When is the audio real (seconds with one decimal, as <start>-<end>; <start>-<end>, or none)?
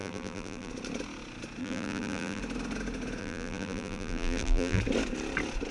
0.7-1.6; 2.4-3.2; 4.8-5.7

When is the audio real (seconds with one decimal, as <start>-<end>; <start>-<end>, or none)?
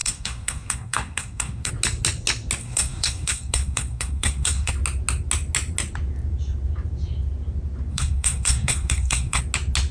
1.7-2.6; 4.7-7.9; 9.4-9.9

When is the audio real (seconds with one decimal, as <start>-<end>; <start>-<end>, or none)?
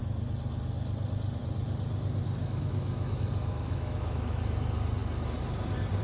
0.0-2.4; 4.4-6.0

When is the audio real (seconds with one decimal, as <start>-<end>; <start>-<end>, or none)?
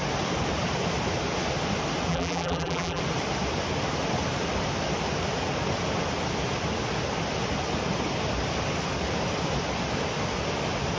0.0-2.1; 3.0-11.0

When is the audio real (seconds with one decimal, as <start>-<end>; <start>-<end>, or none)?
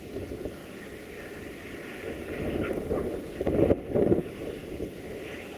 0.0-5.6